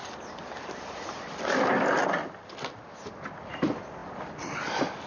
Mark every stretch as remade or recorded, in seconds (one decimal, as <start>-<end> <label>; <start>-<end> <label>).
0.0-5.1 recorded